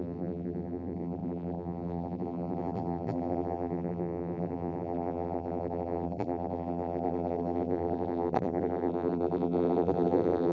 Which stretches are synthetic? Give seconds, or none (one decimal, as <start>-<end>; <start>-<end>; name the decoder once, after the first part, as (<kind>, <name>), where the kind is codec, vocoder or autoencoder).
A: 0.0-10.5 (vocoder, BigVGAN v2)